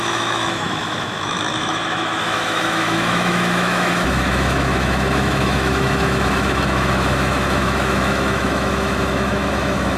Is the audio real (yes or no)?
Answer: no